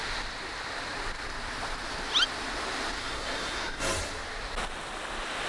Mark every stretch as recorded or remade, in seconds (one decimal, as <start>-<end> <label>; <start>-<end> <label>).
0.0-3.0 recorded; 3.0-3.8 remade; 3.8-5.5 recorded